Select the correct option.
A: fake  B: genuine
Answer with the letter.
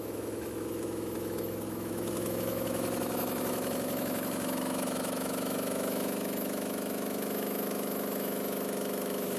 A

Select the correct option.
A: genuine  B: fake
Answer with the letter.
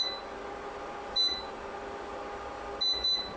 A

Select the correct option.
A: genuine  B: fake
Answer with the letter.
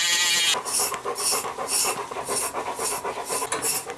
A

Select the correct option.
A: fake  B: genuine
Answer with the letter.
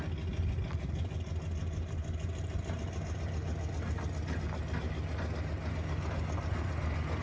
B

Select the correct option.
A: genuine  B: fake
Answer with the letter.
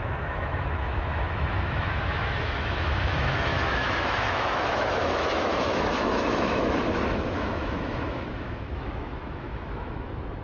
B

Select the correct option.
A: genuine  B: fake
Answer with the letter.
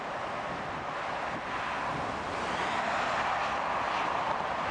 A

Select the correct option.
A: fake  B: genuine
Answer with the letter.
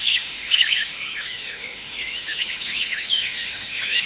A